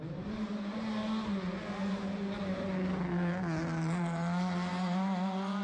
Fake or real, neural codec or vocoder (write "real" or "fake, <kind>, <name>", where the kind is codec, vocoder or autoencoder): real